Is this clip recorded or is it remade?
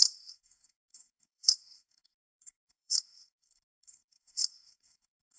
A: remade